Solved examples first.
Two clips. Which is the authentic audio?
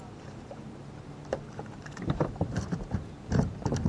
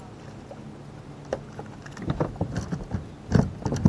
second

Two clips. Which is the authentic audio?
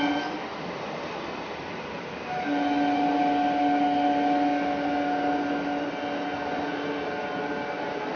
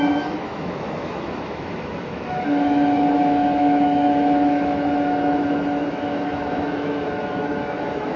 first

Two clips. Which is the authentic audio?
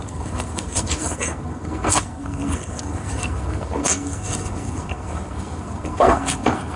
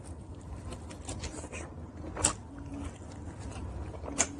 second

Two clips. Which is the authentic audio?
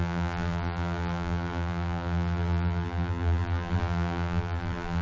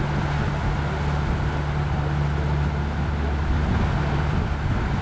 second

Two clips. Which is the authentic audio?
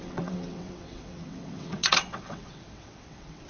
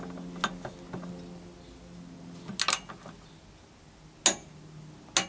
second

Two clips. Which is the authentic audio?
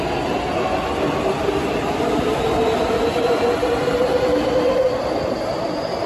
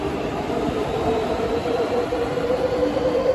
first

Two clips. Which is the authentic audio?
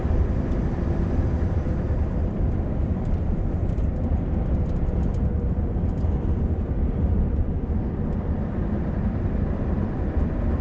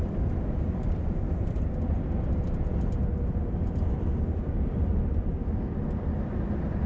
second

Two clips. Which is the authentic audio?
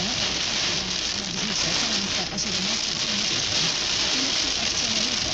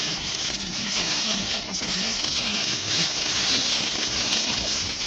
first